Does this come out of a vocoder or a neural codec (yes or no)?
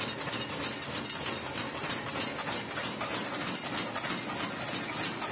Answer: no